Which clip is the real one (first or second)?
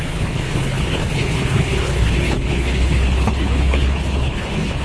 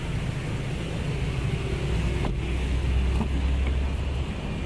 second